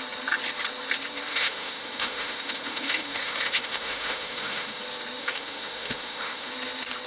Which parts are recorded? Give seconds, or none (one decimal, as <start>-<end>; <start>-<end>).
0.0-1.3; 4.8-5.2; 6.5-7.1